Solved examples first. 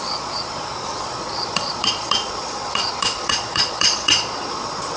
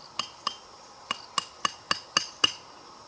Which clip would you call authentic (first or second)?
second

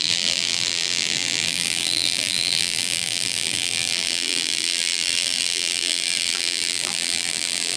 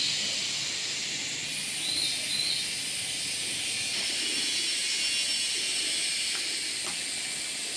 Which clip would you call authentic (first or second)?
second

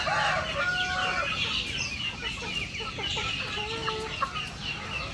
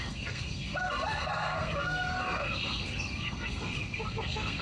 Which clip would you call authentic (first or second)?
first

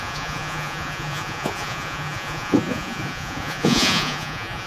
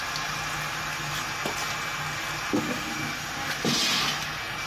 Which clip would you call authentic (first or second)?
second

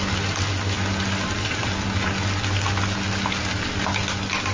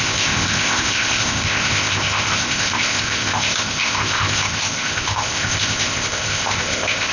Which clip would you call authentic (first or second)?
first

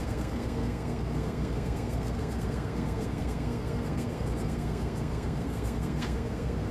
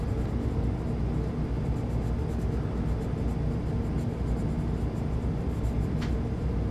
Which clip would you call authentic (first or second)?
second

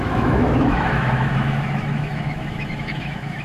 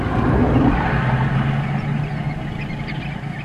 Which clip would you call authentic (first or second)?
second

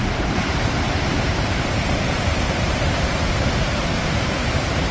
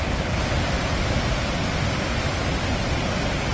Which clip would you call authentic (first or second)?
second